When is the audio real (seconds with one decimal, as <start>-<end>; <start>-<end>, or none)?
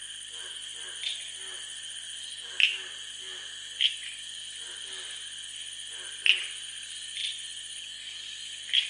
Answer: 0.0-8.9